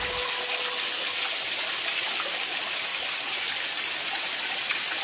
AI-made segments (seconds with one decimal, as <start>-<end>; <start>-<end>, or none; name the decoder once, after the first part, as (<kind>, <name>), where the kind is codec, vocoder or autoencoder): 2.9-3.6 (vocoder, BigVGAN v2)